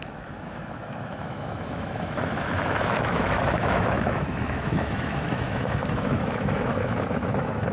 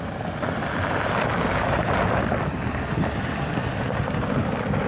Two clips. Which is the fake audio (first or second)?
first